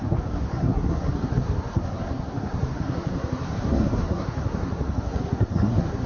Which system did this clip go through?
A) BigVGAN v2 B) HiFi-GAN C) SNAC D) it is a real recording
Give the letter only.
C